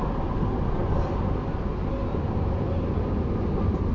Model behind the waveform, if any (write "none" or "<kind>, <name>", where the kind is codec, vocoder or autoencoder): none